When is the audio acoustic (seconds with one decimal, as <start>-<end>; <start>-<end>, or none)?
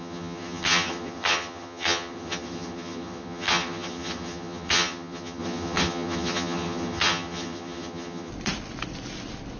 8.3-9.6